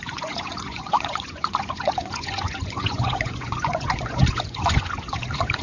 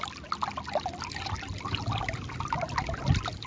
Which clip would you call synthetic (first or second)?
first